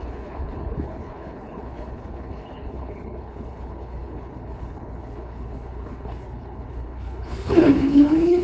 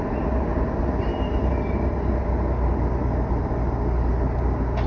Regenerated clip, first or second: first